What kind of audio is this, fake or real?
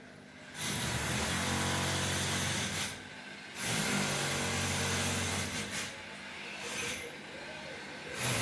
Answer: real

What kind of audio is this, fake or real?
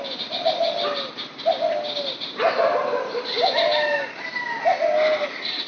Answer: real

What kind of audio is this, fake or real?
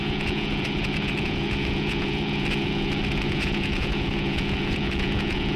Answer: fake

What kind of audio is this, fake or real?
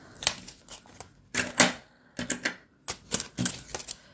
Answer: real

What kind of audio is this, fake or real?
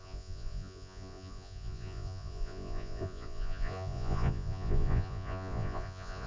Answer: fake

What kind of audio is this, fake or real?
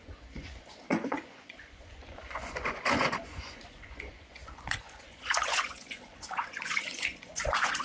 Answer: fake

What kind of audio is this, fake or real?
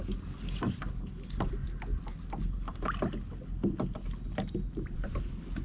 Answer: real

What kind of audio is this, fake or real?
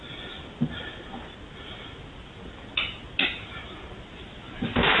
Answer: real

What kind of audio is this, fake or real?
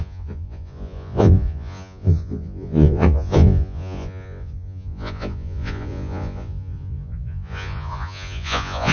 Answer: fake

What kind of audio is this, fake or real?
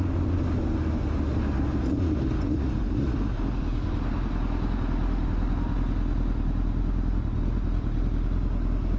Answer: real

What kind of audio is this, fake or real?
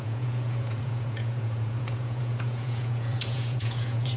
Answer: fake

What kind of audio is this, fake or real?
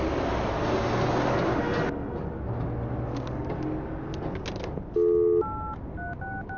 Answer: real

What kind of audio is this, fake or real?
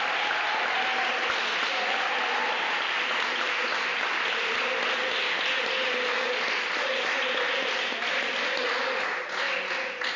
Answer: real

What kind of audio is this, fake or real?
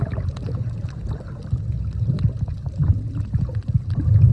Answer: real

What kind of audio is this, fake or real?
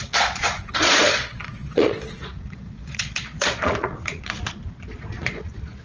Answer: fake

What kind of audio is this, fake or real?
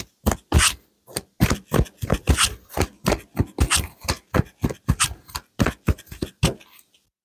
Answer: real